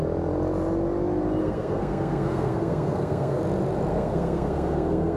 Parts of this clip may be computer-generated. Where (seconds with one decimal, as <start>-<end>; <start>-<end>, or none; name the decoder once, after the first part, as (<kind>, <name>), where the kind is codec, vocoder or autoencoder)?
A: 1.4-3.4 (codec, SNAC); 3.9-5.2